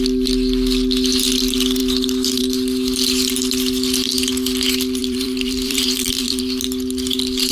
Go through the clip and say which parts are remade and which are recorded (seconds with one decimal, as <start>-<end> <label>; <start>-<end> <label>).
0.0-5.0 recorded; 5.0-6.4 remade; 6.4-7.5 recorded